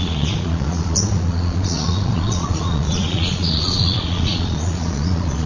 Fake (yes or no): yes